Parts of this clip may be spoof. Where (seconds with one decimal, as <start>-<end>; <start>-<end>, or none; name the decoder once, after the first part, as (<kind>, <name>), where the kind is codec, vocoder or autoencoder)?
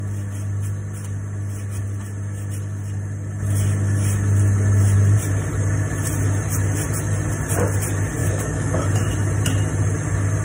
8.2-8.8 (codec, DAC)